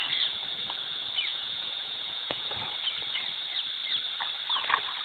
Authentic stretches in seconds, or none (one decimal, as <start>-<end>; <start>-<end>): 0.0-1.3; 2.5-5.0